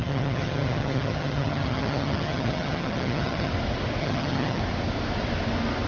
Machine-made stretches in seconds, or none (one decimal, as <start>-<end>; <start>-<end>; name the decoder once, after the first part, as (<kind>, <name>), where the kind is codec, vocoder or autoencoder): 0.0-3.5 (vocoder, HiFi-GAN); 4.0-4.6